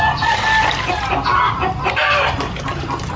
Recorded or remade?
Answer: recorded